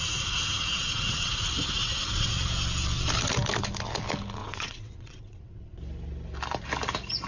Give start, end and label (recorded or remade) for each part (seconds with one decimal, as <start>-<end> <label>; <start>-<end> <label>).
0.0-0.7 recorded; 0.7-1.3 remade; 1.3-1.8 recorded; 1.8-2.3 remade; 2.3-4.4 recorded; 4.4-5.7 remade; 5.7-7.3 recorded